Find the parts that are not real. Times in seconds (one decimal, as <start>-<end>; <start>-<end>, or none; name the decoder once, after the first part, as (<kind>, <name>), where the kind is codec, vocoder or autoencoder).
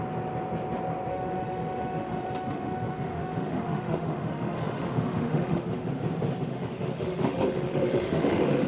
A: 1.1-5.9 (autoencoder, DAC-VAE); 6.5-8.7